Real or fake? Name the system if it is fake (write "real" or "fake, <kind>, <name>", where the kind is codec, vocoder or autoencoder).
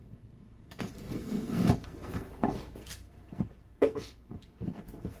fake, codec, SNAC